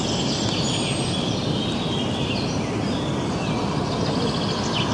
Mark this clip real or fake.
real